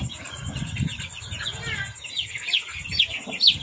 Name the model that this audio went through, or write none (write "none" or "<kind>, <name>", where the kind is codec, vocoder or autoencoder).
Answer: none